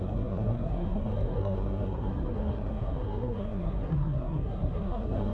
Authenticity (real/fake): fake